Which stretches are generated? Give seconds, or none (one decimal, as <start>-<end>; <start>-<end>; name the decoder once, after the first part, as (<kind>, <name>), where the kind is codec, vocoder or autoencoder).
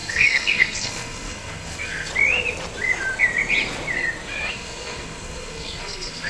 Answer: 0.0-2.1 (codec, SNAC); 4.5-6.3